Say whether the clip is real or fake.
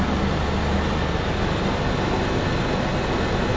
real